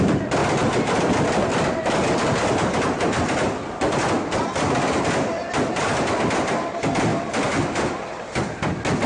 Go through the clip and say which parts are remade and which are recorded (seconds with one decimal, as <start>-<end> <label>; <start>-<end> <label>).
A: 0.0-9.1 recorded